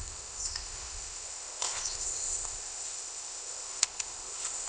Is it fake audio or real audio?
fake